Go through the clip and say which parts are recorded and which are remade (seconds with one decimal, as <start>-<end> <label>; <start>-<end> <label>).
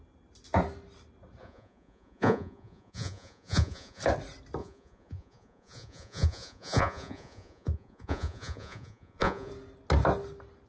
0.0-1.4 recorded; 1.4-4.0 remade; 4.0-4.6 recorded; 4.6-9.5 remade; 9.5-10.7 recorded